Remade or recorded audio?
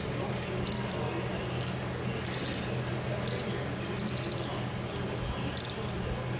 recorded